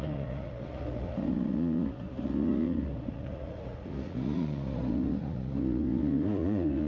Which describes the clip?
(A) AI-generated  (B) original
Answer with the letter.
A